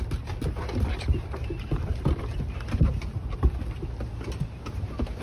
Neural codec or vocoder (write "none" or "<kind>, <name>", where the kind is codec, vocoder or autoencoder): none